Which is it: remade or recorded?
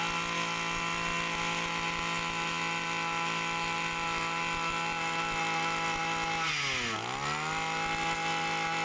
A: recorded